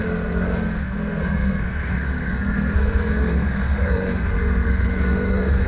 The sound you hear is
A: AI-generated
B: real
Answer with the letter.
A